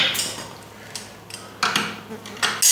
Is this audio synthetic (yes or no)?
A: no